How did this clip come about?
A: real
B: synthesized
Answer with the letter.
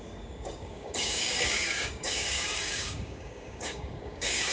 B